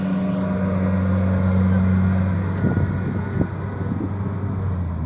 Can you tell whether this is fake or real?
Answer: real